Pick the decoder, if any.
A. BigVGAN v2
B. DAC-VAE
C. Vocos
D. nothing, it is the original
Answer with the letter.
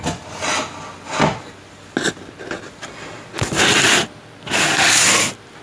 D